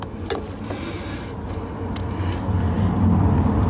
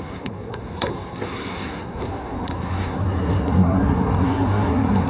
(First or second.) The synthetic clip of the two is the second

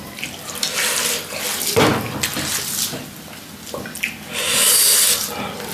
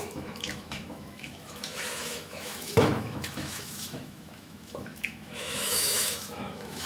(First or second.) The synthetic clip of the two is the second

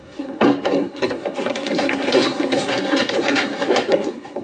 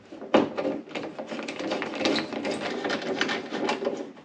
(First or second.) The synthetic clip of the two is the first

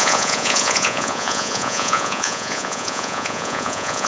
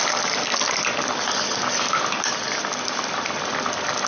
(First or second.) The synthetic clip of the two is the first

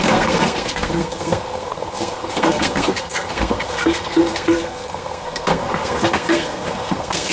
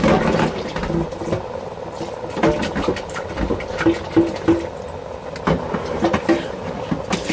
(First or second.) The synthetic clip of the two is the first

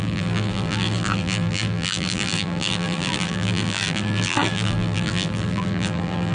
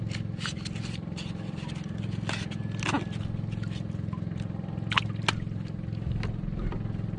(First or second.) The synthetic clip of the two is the first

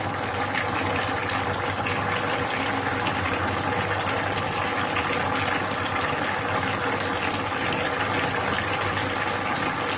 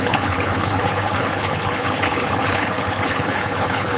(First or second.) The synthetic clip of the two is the second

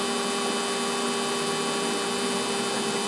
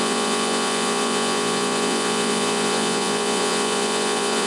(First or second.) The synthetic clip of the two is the second